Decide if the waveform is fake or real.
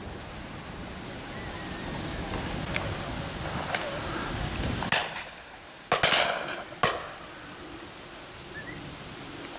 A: real